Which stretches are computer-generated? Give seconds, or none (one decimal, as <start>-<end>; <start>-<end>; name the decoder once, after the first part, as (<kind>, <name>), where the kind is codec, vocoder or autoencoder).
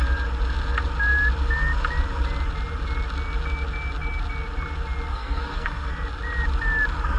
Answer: 5.1-5.9 (codec, SNAC)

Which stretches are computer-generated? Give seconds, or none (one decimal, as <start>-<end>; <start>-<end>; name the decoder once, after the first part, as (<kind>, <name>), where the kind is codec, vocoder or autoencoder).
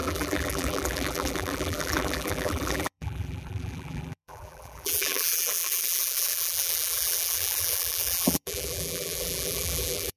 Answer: 0.0-10.2 (vocoder, BigVGAN v2)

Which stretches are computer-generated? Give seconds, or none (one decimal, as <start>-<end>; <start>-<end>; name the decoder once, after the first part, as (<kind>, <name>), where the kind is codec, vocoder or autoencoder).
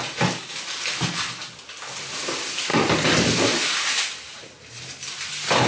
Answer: none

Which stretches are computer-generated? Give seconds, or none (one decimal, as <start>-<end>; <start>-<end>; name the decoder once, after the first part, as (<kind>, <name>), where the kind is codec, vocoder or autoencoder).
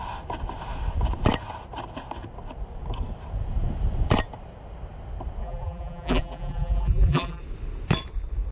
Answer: 5.4-7.4 (vocoder, BigVGAN v2)